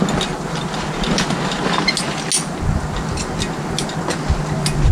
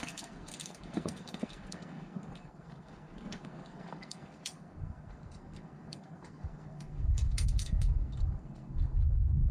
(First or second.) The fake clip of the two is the second